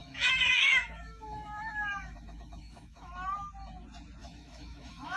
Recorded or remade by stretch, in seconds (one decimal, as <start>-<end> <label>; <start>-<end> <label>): 0.0-3.1 remade; 3.1-4.2 recorded; 4.2-5.2 remade